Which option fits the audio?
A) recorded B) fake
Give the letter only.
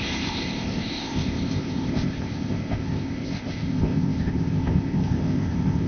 B